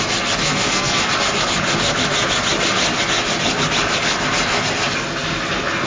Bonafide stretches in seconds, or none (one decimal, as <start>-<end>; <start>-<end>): 0.0-0.4; 1.1-5.9

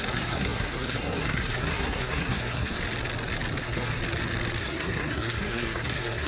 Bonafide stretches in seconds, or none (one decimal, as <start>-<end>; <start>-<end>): 2.8-3.6; 4.0-4.6

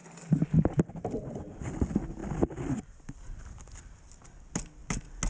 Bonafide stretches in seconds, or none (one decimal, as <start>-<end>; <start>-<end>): 0.0-5.3

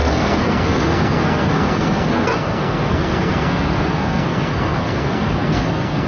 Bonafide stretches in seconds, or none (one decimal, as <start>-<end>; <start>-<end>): none

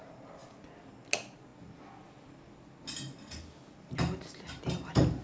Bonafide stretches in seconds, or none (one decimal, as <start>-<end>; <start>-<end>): 0.0-5.2

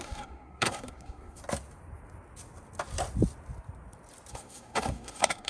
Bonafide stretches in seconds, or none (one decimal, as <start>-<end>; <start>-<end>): 1.4-4.3

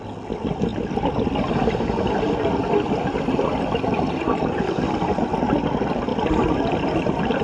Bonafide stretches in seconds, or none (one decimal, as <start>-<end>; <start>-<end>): 0.0-7.4

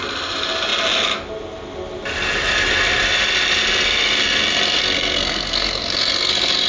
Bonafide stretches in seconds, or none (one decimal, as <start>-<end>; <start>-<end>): 0.0-4.8; 6.3-6.7